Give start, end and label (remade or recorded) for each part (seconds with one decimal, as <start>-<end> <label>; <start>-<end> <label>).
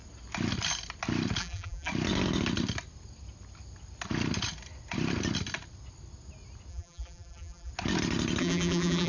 0.0-1.4 recorded; 1.4-1.9 remade; 1.9-6.7 recorded; 6.7-7.7 remade; 7.7-8.4 recorded; 8.4-9.1 remade